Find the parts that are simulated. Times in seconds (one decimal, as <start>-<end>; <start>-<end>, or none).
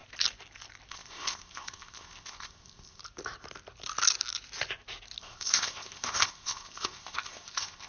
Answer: 0.9-3.0; 5.2-7.9